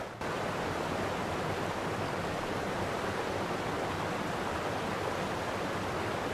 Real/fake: real